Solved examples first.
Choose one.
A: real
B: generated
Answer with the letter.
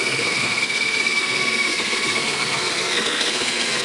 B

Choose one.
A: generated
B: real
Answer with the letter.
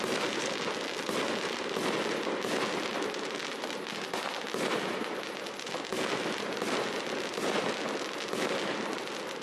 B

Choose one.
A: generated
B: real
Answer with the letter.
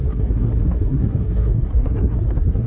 A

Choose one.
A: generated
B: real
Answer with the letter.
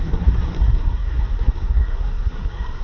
A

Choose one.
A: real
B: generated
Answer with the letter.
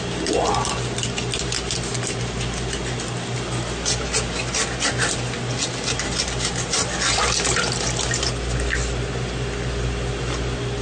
A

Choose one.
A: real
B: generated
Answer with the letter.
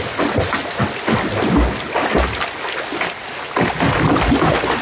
A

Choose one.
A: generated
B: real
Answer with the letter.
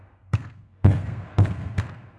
A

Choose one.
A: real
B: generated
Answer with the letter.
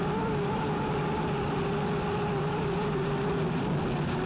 A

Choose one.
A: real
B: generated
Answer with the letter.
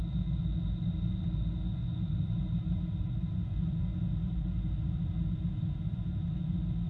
A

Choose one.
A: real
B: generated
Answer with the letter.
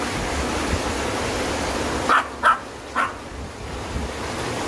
A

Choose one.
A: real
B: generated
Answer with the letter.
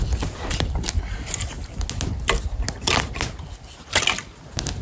A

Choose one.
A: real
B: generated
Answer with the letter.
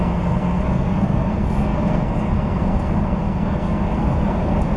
B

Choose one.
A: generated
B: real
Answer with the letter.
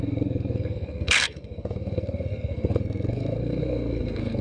A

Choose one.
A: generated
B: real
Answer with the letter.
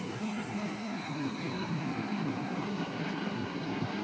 A